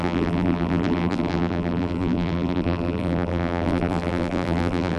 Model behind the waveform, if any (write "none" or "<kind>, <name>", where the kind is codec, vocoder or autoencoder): vocoder, BigVGAN v2